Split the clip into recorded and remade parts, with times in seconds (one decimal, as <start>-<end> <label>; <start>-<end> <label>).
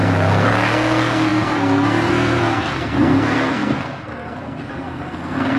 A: 0.0-5.6 remade